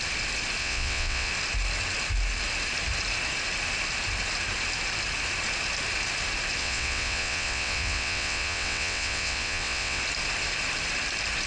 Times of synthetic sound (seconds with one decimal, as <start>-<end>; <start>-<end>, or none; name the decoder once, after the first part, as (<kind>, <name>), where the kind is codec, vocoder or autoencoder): 0.6-1.3 (vocoder, WaveNeXt); 6.6-10.0